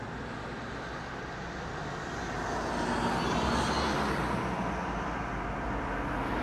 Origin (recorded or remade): recorded